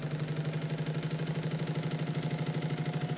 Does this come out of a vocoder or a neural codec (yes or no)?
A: no